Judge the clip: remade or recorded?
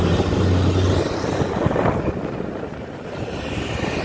recorded